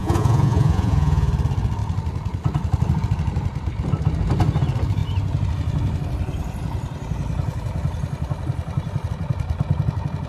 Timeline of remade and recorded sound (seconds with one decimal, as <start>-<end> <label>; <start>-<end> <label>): 0.0-1.3 remade; 1.3-10.3 recorded